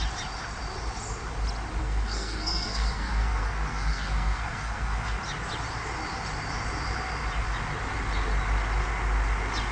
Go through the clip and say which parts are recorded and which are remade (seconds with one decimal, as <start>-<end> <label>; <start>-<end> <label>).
0.0-1.8 recorded; 1.8-5.2 remade; 5.2-9.7 recorded

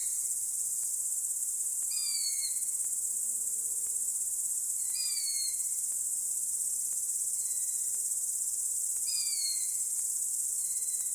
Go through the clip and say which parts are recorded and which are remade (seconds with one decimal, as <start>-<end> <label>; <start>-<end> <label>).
0.0-0.9 remade; 0.9-9.0 recorded; 9.0-10.1 remade; 10.1-11.1 recorded

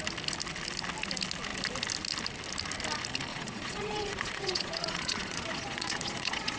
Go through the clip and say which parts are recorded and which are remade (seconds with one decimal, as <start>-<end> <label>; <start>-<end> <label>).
0.0-3.3 recorded; 3.3-6.6 remade

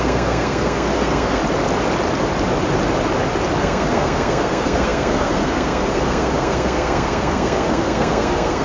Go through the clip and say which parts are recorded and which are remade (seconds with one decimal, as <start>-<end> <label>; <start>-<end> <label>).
0.0-1.4 remade; 1.4-3.6 recorded; 3.6-8.6 remade

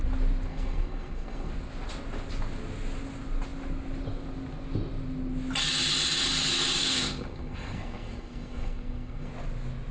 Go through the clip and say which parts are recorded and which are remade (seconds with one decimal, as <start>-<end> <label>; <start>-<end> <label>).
0.0-0.5 recorded; 0.5-1.5 remade; 1.5-6.8 recorded; 6.8-9.3 remade; 9.3-9.9 recorded

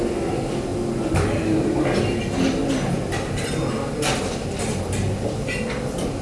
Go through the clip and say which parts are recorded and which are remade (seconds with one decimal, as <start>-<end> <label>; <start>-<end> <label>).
0.0-6.2 recorded

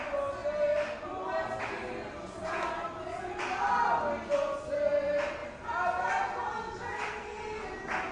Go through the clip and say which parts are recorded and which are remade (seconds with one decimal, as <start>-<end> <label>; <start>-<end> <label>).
0.0-6.9 recorded; 6.9-7.4 remade; 7.4-8.1 recorded